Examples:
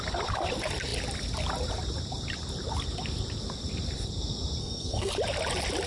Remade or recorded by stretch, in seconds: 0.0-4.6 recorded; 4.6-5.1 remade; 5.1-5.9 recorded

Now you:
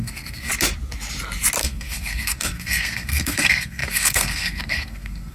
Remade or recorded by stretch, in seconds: 0.0-0.5 remade; 0.5-1.6 recorded; 1.6-5.3 remade

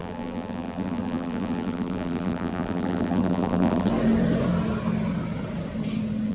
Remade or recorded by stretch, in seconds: 0.0-3.9 remade; 3.9-6.3 recorded